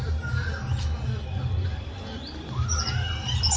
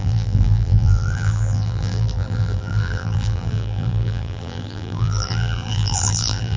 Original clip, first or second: first